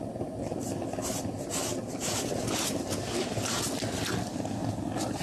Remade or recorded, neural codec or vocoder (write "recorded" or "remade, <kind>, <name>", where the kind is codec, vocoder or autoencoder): recorded